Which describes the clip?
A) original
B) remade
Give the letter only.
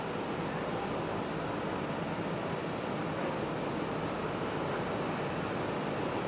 A